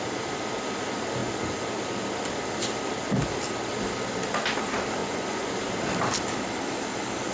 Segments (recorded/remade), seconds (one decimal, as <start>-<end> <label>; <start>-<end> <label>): 0.0-5.0 recorded; 5.0-5.5 remade; 5.5-7.3 recorded